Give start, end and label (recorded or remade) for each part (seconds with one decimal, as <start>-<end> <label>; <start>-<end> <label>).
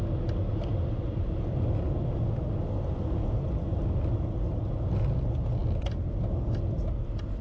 0.0-7.4 recorded